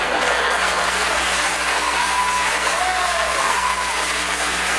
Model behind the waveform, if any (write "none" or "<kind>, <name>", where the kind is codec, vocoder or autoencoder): codec, SNAC